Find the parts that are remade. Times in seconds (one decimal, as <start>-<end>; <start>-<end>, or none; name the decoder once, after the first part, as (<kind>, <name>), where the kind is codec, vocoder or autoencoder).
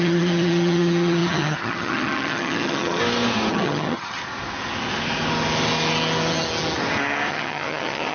0.0-3.0 (vocoder, HiFi-GAN); 3.5-4.2; 7.3-8.1